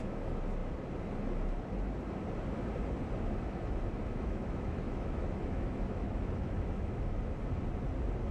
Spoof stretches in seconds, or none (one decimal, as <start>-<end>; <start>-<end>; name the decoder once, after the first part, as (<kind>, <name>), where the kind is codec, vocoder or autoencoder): 4.0-7.2 (autoencoder, DAC-VAE)